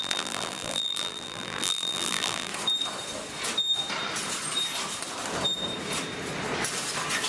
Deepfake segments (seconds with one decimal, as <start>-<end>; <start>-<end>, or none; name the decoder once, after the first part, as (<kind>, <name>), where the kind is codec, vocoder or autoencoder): 0.0-2.5 (vocoder, BigVGAN v2)